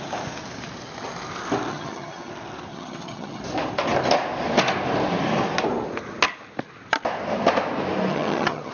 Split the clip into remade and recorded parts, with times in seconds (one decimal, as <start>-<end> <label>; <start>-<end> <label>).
0.0-1.7 recorded; 1.7-2.3 remade; 2.3-2.7 recorded; 2.7-3.4 remade; 3.4-8.1 recorded; 8.1-8.7 remade